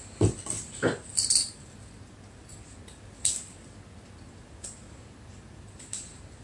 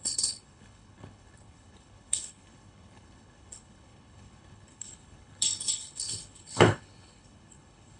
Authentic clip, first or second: first